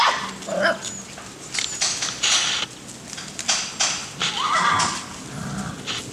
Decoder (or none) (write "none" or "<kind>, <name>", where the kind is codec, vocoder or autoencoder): none